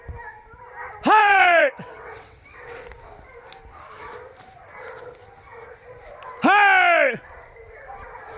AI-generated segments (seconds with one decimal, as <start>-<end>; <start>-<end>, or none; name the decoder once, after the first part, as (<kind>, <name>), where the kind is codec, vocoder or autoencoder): 1.2-2.8 (vocoder, WaveNeXt)